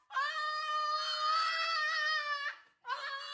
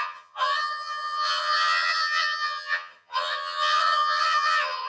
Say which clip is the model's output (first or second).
second